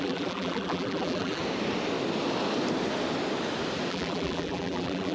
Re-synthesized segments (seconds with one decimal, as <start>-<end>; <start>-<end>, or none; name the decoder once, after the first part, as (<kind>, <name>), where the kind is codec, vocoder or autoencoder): 0.0-1.4 (vocoder, BigVGAN v2); 3.9-5.1